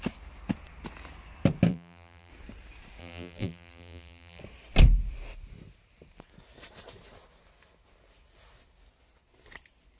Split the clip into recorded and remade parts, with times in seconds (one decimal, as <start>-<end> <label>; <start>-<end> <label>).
0.0-1.7 recorded; 1.7-2.3 remade; 2.3-3.0 recorded; 3.0-4.4 remade; 4.4-10.0 recorded